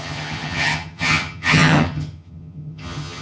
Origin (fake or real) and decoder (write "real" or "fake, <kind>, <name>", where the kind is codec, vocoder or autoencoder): fake, vocoder, HiFi-GAN